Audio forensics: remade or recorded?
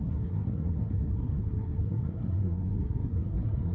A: remade